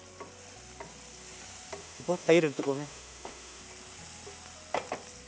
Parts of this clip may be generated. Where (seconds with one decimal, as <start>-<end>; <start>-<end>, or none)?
1.8-3.6